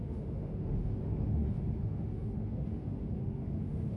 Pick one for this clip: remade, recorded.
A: remade